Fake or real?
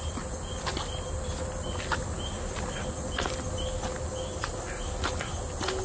real